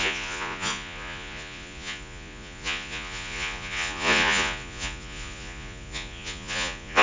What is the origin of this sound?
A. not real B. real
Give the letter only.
A